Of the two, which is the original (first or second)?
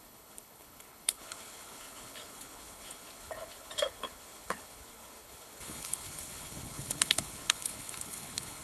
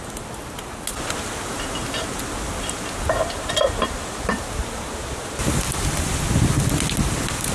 second